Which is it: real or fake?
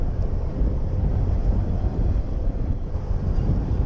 fake